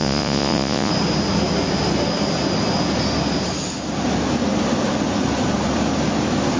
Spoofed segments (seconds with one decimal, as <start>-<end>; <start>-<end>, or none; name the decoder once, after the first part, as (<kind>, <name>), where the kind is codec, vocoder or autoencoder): 0.0-0.9 (vocoder, Vocos)